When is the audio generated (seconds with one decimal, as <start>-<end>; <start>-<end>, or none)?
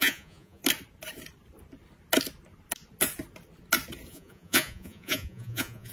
0.0-0.6; 4.1-5.9